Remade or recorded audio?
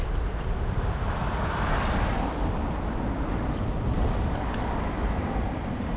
recorded